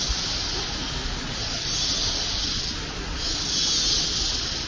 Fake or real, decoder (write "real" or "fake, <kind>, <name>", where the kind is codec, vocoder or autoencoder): real